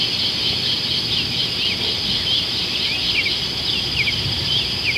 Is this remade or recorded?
recorded